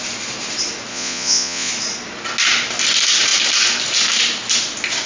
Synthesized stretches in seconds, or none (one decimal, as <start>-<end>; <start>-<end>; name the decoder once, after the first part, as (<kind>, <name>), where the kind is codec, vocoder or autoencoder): 0.9-1.7 (vocoder, Vocos)